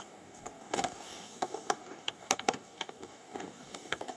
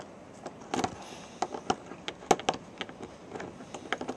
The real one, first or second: second